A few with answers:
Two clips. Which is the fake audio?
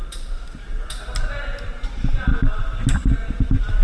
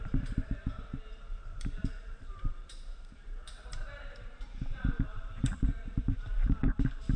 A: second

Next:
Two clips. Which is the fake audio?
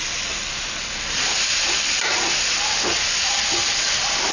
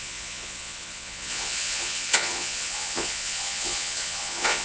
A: second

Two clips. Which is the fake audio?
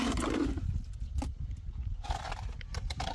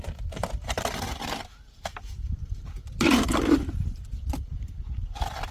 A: second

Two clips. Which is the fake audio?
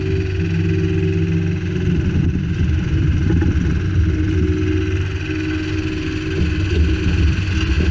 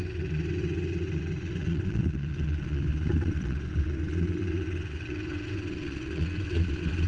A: second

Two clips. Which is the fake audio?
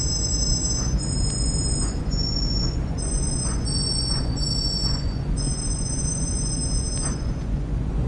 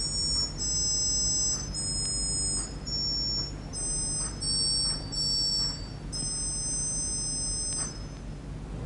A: first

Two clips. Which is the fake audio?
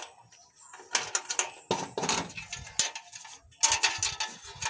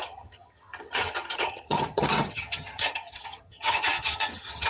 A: second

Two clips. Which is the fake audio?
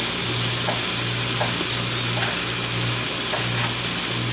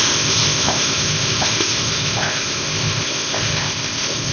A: second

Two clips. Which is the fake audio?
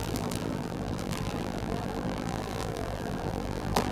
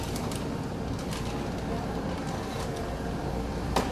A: first